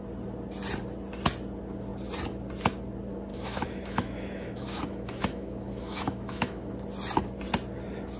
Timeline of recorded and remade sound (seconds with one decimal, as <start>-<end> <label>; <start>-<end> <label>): 0.0-3.3 recorded; 3.3-6.7 remade; 6.7-8.2 recorded